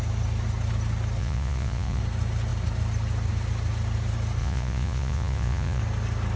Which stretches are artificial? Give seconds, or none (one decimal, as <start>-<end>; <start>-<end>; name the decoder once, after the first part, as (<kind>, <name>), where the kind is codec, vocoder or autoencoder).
1.2-2.0 (vocoder, Vocos); 4.4-5.8